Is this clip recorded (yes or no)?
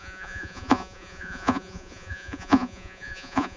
no